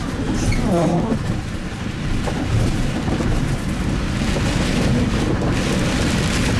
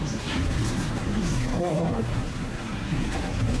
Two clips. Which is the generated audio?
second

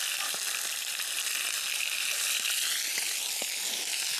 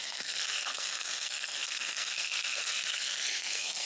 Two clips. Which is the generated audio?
second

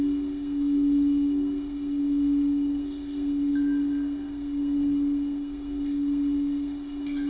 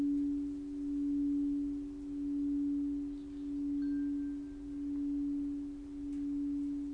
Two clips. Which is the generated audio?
first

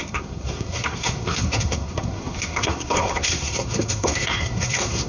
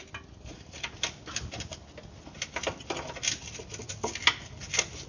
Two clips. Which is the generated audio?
first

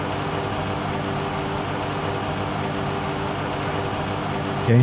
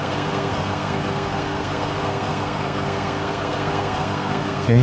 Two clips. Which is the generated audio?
second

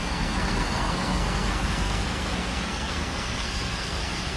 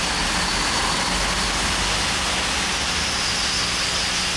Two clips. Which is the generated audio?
first